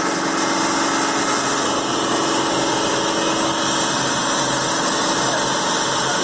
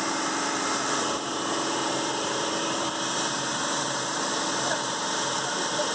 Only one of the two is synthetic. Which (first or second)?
second